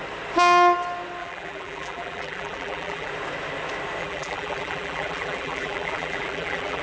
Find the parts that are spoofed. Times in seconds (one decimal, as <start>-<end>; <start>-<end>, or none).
1.2-3.1; 4.0-6.8